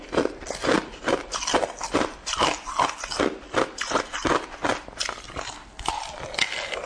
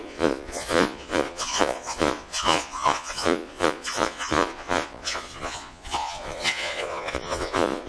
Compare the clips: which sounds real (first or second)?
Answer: first